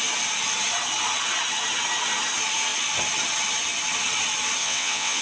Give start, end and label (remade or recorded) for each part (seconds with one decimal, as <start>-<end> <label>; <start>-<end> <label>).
0.0-4.6 recorded; 4.6-5.2 remade